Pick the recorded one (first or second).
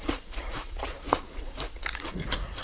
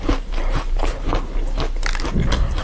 second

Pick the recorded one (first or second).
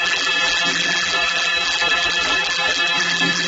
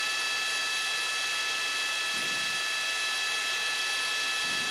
second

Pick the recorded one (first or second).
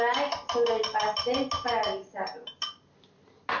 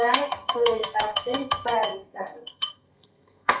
first